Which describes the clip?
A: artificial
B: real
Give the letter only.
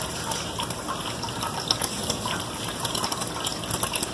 B